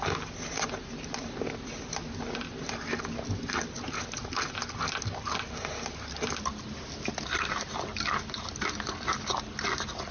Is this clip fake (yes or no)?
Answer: no